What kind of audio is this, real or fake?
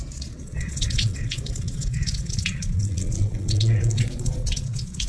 fake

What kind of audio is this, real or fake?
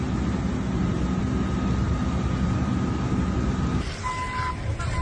real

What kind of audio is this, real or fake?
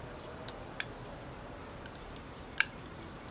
fake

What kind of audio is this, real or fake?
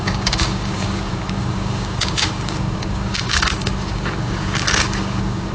fake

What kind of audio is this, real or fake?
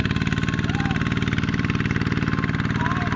real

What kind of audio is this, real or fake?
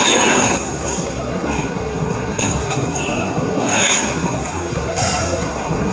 fake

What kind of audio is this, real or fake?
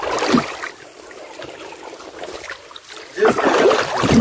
real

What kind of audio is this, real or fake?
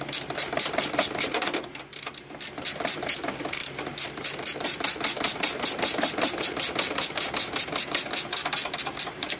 fake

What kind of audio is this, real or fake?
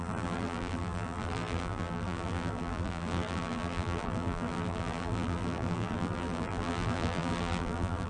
fake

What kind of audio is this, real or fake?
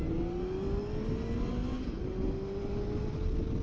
real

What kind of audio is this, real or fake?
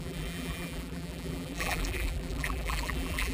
fake